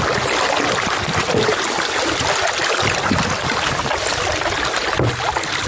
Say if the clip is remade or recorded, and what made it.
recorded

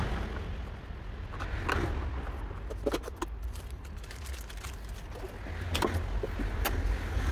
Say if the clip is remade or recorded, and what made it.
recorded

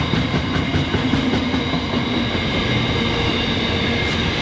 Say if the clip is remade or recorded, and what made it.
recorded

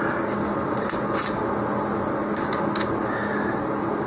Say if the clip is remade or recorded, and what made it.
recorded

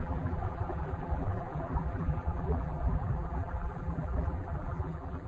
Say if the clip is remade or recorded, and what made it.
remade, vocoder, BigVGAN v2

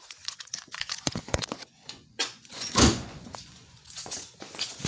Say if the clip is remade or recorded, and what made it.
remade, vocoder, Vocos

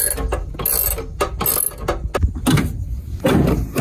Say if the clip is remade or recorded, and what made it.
recorded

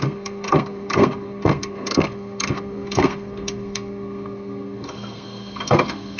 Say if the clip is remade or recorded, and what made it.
remade, codec, SNAC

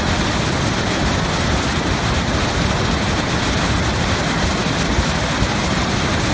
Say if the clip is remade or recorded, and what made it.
recorded